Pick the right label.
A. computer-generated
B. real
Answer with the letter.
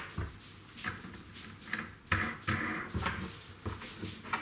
B